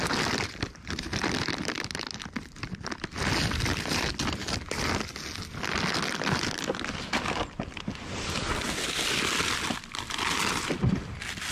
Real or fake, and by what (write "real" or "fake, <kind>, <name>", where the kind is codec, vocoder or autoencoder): real